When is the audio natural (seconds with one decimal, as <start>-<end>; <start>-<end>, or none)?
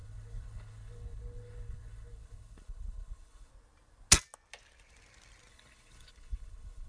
3.5-5.5